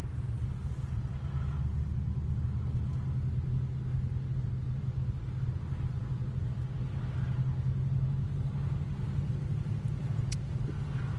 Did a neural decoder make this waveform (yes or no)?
no